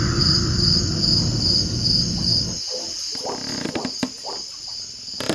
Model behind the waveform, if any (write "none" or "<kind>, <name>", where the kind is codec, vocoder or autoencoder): none